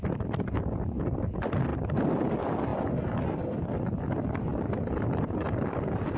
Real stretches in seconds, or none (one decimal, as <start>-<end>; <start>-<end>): 0.0-6.2